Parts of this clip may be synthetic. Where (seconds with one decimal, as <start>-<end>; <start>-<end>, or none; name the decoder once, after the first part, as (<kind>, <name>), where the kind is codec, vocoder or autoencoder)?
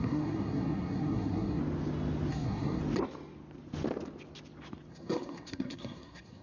0.0-1.6 (codec, SNAC); 2.3-2.8; 4.9-6.4